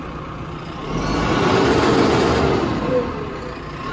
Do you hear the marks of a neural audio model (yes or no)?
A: no